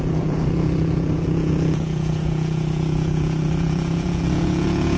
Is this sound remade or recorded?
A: remade